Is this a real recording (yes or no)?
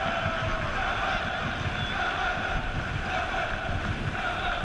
yes